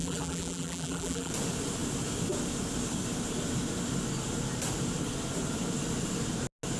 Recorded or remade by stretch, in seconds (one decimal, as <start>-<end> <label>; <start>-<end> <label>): 0.0-1.3 remade; 1.3-6.8 recorded

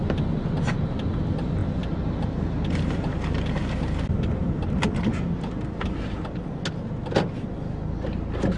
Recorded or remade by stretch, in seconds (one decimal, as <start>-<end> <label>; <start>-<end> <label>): 0.0-1.6 recorded; 1.6-3.6 remade; 3.6-8.6 recorded

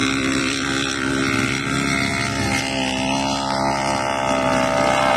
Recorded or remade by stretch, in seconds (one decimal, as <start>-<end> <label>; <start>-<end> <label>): 0.0-1.1 remade; 1.1-5.2 recorded